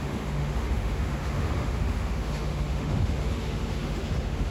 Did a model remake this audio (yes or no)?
yes